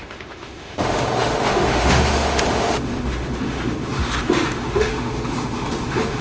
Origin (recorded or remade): remade